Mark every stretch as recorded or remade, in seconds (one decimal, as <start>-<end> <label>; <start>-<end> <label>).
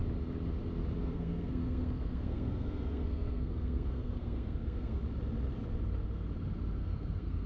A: 0.0-1.0 recorded; 1.0-5.0 remade; 5.0-6.8 recorded; 6.8-7.5 remade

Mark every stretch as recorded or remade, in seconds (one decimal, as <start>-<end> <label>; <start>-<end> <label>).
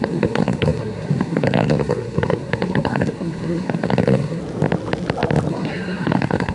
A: 0.0-4.4 remade; 4.4-5.5 recorded; 5.5-6.5 remade